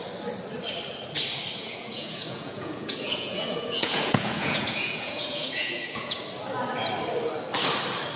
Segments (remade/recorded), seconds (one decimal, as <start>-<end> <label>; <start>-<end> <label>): 0.0-1.6 recorded; 1.6-6.2 remade; 6.2-8.2 recorded